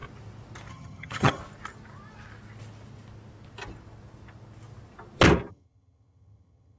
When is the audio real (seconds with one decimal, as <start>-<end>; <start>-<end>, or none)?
0.0-0.7; 1.4-5.5